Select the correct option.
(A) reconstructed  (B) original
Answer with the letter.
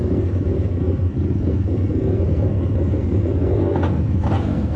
A